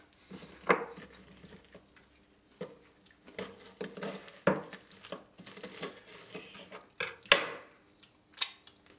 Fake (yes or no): no